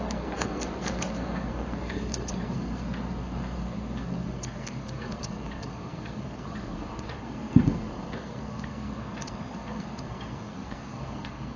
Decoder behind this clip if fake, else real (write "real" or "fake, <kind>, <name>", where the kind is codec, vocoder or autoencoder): fake, codec, SNAC